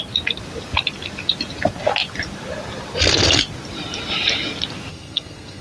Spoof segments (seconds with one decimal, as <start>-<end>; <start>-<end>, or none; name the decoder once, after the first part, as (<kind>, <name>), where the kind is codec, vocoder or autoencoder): 4.9-5.6 (codec, SNAC)